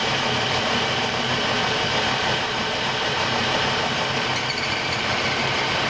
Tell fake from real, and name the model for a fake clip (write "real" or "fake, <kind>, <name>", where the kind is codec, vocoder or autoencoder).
fake, vocoder, BigVGAN v2